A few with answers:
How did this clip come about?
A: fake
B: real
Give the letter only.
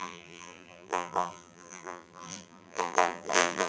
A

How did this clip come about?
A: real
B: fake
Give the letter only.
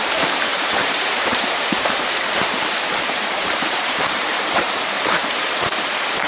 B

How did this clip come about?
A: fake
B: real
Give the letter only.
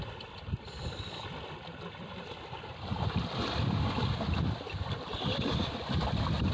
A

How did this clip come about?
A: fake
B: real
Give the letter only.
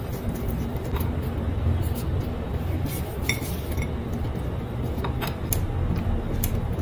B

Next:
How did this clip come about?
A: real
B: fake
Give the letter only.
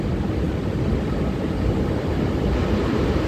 A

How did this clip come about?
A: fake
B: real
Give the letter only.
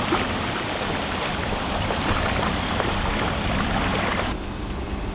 B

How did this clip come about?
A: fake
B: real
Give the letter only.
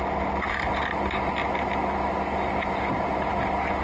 B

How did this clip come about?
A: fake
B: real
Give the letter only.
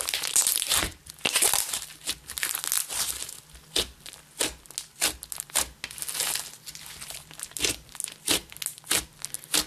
B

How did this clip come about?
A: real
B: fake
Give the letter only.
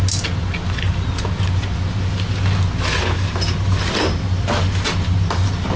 A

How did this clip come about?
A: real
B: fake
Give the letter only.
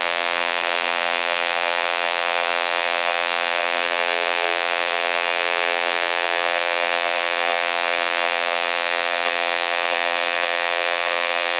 B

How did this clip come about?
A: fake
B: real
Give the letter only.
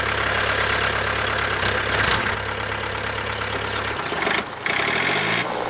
B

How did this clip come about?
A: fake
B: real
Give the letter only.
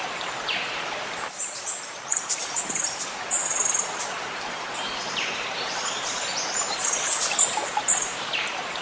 A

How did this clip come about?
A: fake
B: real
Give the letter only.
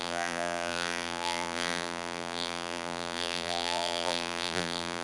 A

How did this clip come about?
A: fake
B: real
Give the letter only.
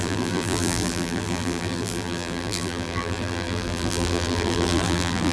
A